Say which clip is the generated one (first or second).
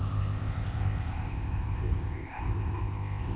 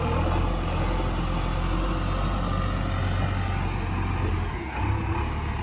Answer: first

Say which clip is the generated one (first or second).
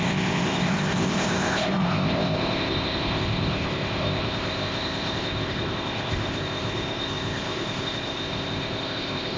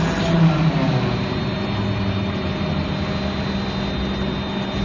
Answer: first